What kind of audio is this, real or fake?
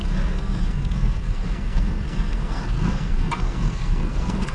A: fake